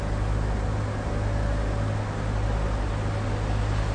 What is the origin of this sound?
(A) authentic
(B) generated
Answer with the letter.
A